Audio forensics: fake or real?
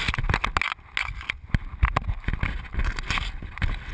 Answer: real